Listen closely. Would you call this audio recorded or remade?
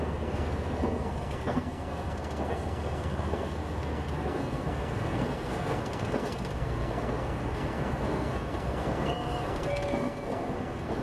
remade